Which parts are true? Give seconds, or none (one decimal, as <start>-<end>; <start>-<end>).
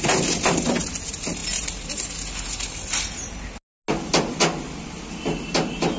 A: 0.0-6.0